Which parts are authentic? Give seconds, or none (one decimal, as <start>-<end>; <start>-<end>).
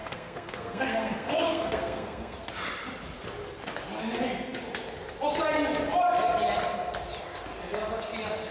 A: 2.5-8.5